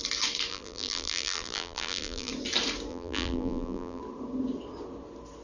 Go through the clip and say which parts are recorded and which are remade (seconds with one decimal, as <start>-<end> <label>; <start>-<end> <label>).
0.0-0.5 recorded; 0.5-2.3 remade; 2.3-2.9 recorded; 2.9-4.0 remade; 4.0-5.4 recorded